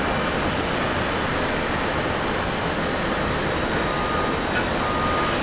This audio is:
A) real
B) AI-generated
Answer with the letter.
A